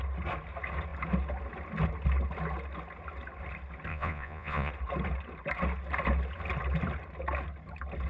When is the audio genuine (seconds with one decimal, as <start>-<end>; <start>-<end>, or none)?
0.0-3.9; 4.7-8.1